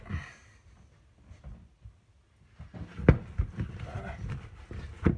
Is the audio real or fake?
real